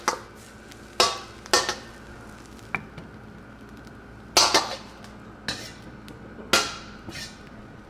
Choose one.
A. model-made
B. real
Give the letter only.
B